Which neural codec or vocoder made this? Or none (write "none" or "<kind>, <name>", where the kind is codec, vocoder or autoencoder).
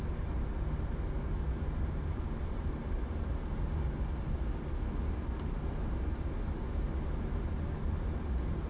none